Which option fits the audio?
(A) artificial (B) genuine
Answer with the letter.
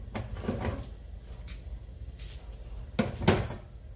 B